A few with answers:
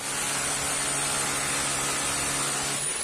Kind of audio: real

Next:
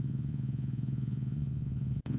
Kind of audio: fake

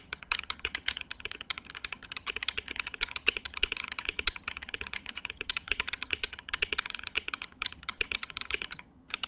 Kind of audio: fake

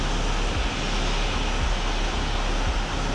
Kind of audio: real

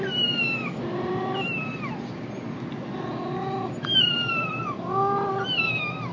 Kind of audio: real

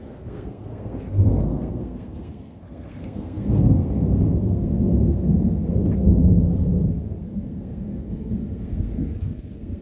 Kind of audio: fake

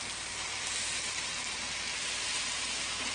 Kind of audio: real